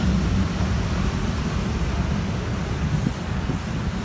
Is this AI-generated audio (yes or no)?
no